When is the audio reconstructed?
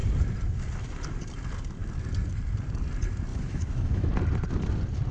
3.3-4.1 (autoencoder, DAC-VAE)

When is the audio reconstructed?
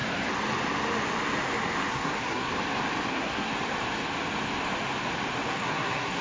1.9-2.5 (codec, SNAC); 3.1-3.5; 5.5-6.2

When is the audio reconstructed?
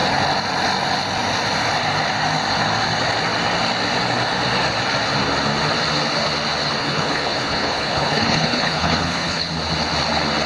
6.8-9.5 (codec, HILCodec)